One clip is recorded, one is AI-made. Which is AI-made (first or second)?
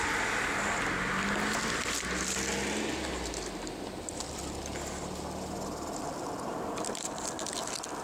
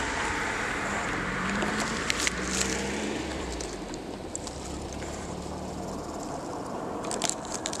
second